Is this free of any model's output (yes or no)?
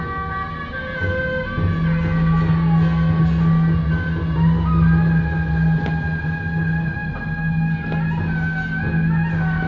yes